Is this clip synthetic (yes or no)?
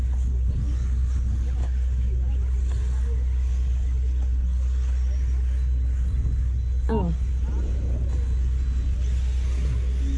no